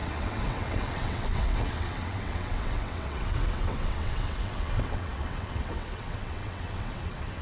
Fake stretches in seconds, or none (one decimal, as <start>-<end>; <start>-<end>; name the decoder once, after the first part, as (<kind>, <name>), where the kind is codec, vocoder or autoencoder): 0.0-7.4 (vocoder, WaveNeXt)